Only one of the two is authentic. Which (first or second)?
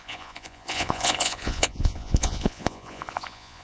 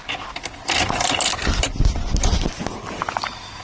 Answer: second